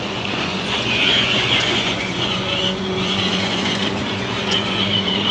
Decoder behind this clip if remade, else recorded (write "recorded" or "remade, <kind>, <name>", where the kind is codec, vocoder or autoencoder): remade, vocoder, Vocos